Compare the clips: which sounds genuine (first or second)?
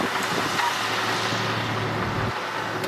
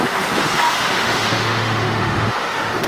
first